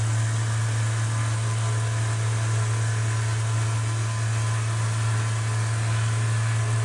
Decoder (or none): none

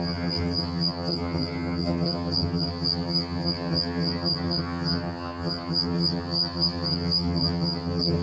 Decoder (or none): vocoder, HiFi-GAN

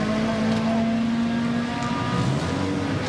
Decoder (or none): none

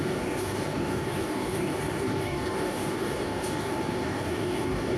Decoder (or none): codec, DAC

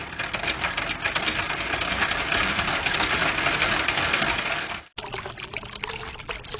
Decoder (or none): none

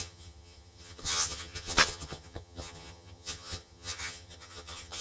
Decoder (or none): vocoder, HiFi-GAN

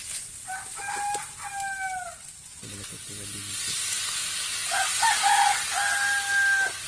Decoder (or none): none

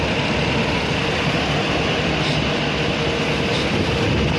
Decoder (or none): none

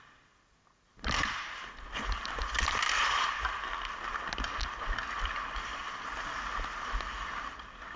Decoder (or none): none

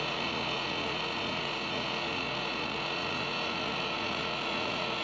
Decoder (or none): vocoder, Vocos